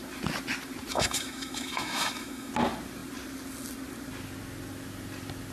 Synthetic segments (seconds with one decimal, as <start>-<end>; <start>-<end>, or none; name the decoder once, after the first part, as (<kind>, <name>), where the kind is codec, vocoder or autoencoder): 0.9-2.5 (autoencoder, DAC-VAE)